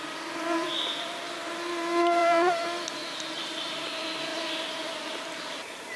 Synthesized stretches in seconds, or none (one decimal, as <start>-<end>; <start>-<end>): 0.0-4.3; 5.2-6.0